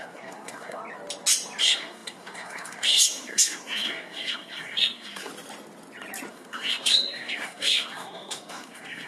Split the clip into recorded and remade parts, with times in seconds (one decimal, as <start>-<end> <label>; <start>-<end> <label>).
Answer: 0.0-0.8 remade; 0.8-1.6 recorded; 1.6-5.3 remade; 5.3-6.3 recorded; 6.3-9.1 remade